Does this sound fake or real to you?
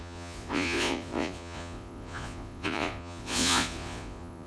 fake